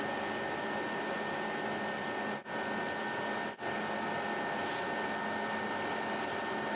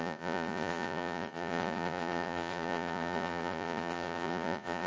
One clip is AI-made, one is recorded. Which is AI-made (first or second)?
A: second